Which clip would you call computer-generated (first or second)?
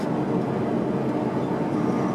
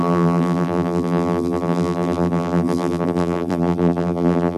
second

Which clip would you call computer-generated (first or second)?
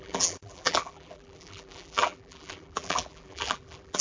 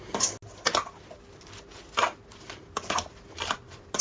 first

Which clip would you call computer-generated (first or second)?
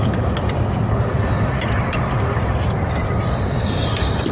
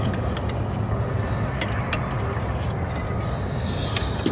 first